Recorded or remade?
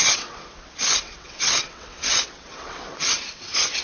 remade